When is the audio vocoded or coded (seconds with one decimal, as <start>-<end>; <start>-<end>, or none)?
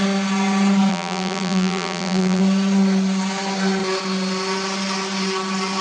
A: 0.9-2.4